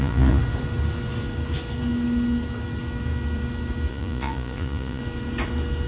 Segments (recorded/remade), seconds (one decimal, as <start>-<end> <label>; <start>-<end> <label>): 0.0-0.4 remade; 0.4-3.9 recorded; 3.9-5.0 remade; 5.0-5.9 recorded